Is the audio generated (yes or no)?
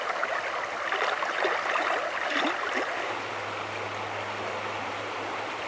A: no